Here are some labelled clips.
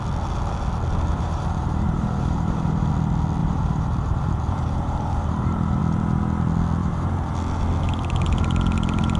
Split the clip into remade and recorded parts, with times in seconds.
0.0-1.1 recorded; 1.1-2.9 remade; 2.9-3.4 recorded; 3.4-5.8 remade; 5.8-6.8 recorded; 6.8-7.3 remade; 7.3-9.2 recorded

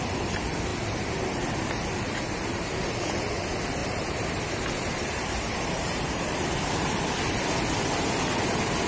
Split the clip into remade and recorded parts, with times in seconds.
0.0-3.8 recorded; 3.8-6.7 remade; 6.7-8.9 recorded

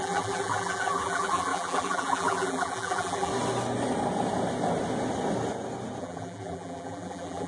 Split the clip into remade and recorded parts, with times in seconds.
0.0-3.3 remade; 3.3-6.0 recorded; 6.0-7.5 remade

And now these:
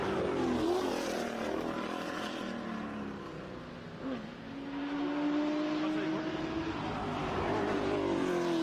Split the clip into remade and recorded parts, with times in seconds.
0.0-8.6 recorded